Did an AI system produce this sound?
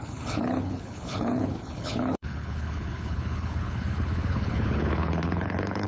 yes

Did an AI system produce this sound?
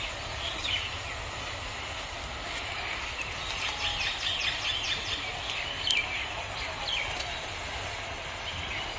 no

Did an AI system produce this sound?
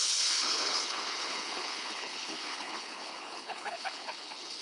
yes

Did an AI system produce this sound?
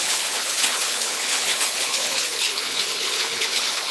yes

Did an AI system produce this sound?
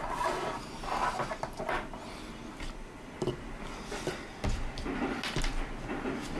no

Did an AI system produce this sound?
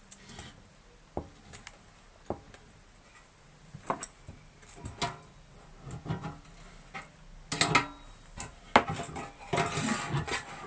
no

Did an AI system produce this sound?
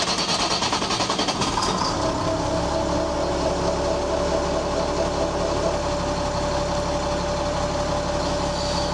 no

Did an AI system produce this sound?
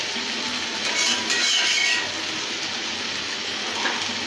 no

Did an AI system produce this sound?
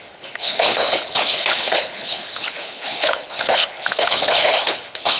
yes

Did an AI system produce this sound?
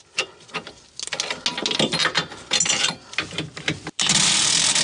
no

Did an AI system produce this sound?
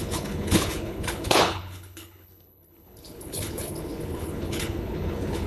yes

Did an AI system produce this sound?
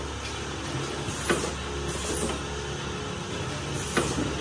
no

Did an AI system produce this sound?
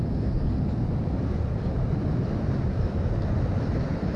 no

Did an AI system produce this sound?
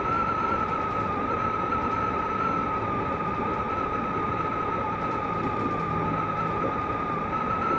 no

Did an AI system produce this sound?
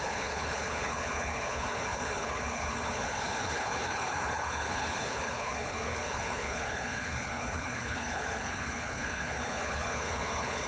yes